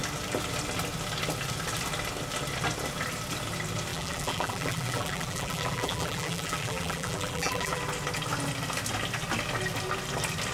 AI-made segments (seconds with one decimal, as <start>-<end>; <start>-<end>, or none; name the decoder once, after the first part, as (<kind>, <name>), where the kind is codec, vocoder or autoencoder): 3.9-7.8 (vocoder, BigVGAN v2)